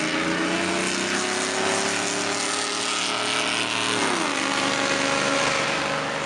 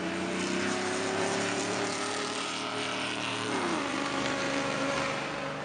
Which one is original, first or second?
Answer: first